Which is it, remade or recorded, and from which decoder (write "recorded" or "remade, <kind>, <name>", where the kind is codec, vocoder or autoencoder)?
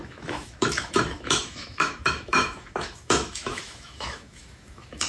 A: remade, autoencoder, DAC-VAE